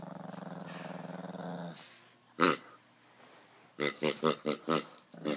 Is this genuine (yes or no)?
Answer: yes